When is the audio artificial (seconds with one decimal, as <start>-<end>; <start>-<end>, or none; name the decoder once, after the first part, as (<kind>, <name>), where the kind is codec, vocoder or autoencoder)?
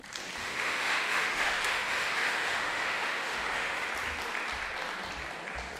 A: 0.4-3.9 (autoencoder, DAC-VAE)